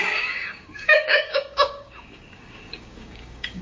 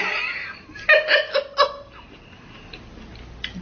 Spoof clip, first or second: first